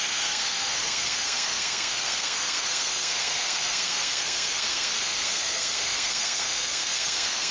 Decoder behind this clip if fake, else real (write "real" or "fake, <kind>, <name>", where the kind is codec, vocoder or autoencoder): fake, codec, SNAC